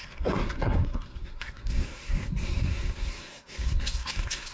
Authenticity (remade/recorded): remade